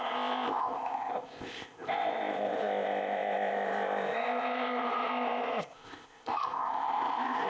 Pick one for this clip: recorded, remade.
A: remade